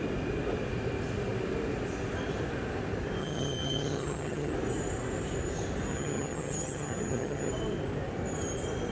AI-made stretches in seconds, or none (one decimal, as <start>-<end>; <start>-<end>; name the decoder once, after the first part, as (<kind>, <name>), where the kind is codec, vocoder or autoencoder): 3.2-4.5 (vocoder, HiFi-GAN); 5.9-7.5